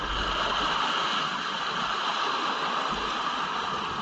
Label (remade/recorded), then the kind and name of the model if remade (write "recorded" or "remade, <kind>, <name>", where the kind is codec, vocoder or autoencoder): recorded